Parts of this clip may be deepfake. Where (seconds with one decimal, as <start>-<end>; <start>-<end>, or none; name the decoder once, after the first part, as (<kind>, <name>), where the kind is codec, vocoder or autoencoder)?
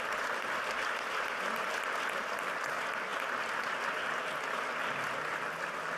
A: none